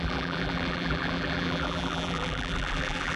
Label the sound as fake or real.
fake